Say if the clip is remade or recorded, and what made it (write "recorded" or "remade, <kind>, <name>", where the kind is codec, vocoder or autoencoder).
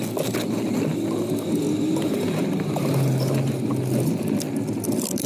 recorded